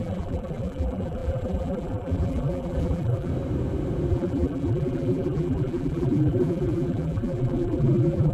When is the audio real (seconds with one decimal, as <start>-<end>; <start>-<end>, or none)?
3.3-4.1